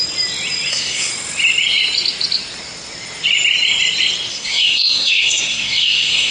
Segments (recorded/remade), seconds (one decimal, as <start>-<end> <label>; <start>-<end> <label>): 0.0-0.7 recorded; 0.7-1.1 remade; 1.1-4.3 recorded; 4.3-6.3 remade